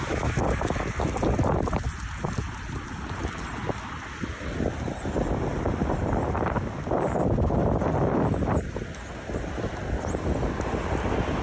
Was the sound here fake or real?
real